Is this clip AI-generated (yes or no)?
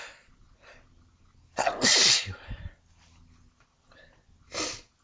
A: no